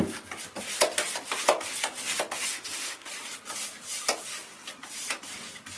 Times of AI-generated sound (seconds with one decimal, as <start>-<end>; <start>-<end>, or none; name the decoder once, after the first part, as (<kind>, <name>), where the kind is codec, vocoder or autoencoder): 2.5-3.1 (autoencoder, DAC-VAE)